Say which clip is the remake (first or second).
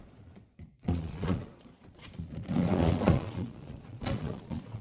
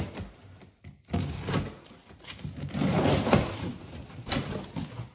first